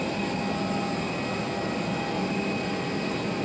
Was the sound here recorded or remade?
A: recorded